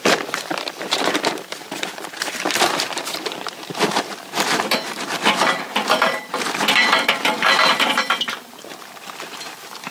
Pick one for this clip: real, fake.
fake